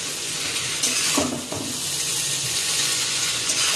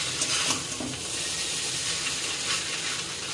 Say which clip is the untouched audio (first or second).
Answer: second